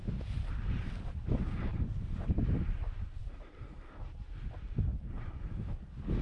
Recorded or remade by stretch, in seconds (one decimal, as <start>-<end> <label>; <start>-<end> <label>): 0.0-1.7 recorded; 1.7-2.4 remade; 2.4-3.2 recorded; 3.2-4.4 remade; 4.4-4.9 recorded; 4.9-5.4 remade; 5.4-6.2 recorded